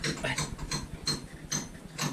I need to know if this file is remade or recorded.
recorded